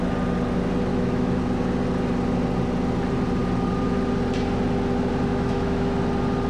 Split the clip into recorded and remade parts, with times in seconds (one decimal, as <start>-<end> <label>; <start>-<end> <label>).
0.0-0.9 recorded; 0.9-1.4 remade; 1.4-5.3 recorded; 5.3-6.0 remade; 6.0-6.5 recorded

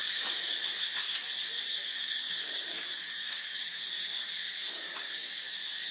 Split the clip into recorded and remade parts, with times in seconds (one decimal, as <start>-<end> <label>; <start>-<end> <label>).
0.0-0.7 remade; 0.7-1.9 recorded; 1.9-5.4 remade; 5.4-5.9 recorded

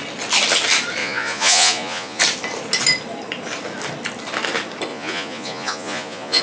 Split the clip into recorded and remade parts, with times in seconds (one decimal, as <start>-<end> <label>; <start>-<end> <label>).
0.0-1.0 recorded; 1.0-2.2 remade; 2.2-4.9 recorded; 4.9-6.4 remade

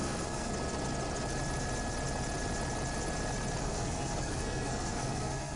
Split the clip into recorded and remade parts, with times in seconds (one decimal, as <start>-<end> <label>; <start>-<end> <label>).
0.0-0.5 remade; 0.5-3.6 recorded; 3.6-5.6 remade

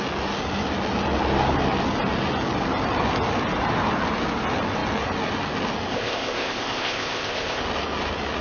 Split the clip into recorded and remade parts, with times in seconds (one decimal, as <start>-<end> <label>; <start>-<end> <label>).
0.0-5.9 recorded; 5.9-7.6 remade; 7.6-8.4 recorded